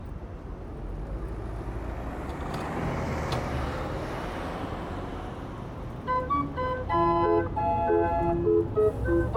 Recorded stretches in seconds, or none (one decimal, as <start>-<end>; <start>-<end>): 0.0-9.4